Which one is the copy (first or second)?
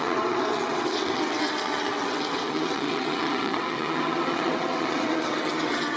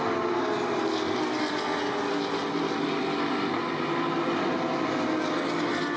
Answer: first